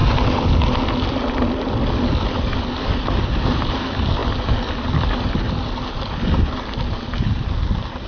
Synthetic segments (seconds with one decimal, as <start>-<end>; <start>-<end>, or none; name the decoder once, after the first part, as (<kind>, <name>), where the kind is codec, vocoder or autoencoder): none